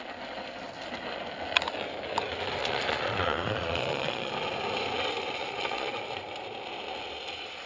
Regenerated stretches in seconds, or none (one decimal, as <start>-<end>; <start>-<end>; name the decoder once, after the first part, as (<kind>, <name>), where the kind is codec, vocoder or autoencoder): 2.6-4.3 (vocoder, Vocos); 5.4-6.0